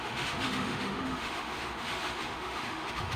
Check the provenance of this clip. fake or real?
fake